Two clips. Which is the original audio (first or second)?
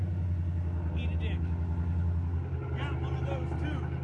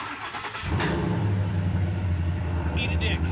first